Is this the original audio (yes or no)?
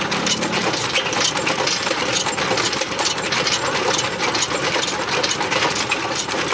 yes